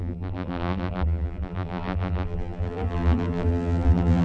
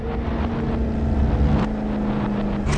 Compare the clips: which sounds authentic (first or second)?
second